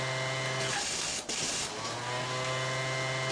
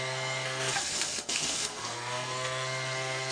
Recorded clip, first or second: first